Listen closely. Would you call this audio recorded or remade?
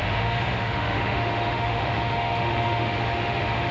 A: remade